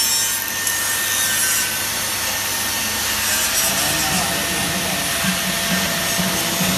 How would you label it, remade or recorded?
recorded